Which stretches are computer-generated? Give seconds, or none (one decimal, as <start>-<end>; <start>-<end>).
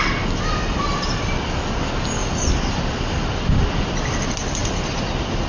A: none